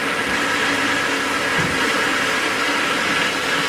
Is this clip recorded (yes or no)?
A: yes